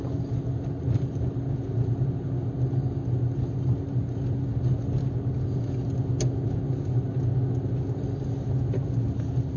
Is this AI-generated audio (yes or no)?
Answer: no